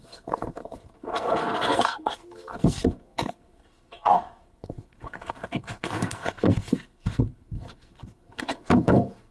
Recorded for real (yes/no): no